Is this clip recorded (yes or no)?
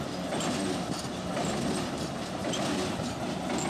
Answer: yes